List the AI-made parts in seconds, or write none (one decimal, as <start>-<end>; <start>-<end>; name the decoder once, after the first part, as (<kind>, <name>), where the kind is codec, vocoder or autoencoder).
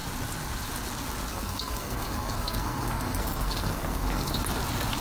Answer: 1.3-4.3 (codec, SNAC)